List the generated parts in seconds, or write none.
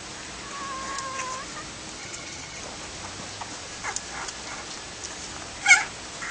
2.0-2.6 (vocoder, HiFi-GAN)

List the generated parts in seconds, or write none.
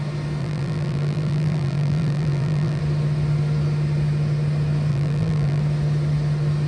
0.4-2.8 (vocoder, BigVGAN v2); 4.9-5.6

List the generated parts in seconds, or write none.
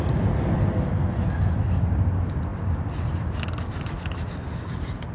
none